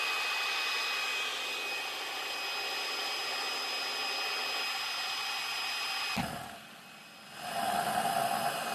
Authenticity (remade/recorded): recorded